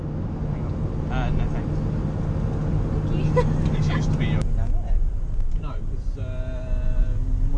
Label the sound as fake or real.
real